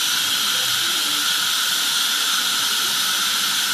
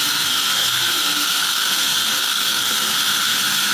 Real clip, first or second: first